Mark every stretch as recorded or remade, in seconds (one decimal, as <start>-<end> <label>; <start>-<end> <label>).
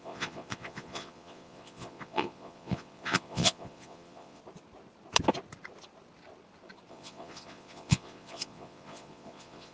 0.0-4.4 remade; 4.4-6.9 recorded; 6.9-9.7 remade